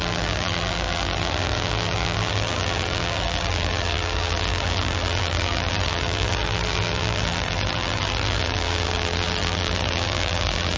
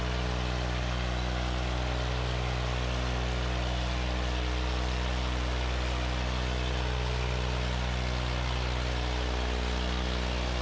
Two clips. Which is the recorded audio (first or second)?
second